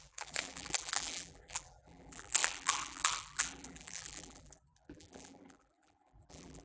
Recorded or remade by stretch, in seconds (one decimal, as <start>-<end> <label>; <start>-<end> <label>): 0.0-6.6 remade